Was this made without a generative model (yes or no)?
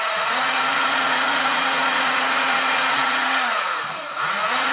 no